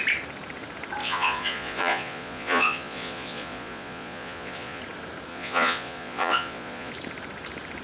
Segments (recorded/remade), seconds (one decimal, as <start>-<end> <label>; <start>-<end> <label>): 0.0-1.0 recorded; 1.0-4.8 remade; 4.8-5.3 recorded; 5.3-6.9 remade; 6.9-7.8 recorded